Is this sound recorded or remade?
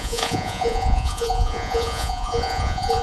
remade